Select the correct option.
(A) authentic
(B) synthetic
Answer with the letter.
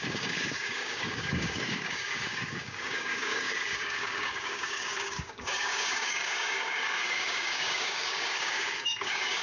B